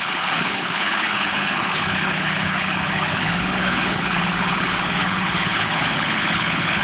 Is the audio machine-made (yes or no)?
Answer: yes